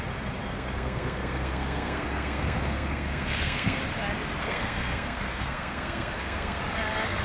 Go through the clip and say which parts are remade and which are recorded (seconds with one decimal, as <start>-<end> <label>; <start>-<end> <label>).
0.0-0.5 recorded; 0.5-3.8 remade; 3.8-4.4 recorded; 4.4-6.6 remade; 6.6-7.2 recorded